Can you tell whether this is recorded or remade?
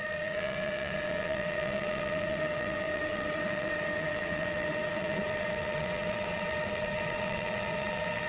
remade